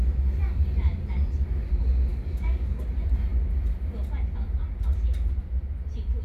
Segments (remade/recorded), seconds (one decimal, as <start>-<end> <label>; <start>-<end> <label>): 0.0-2.1 recorded; 2.1-2.8 remade; 2.8-6.2 recorded